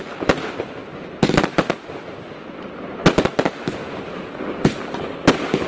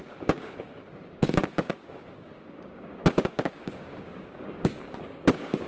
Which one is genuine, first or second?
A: first